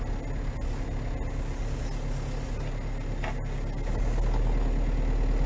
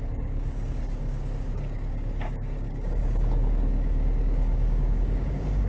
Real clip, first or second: first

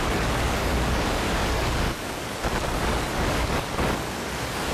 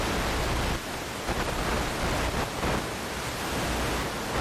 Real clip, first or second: second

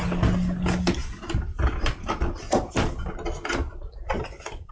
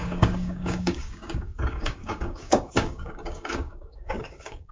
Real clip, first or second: first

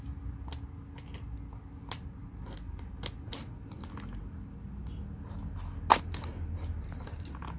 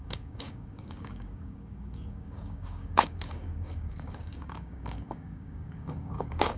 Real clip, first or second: first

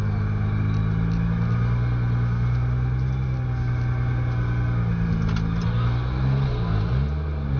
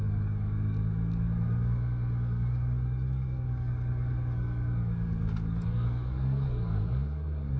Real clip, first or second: first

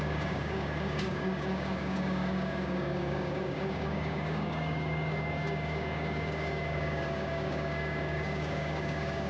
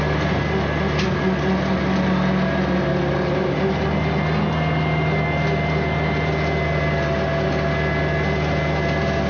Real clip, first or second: second